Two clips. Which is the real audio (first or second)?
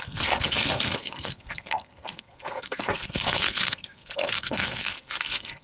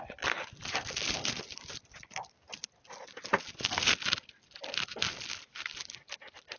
second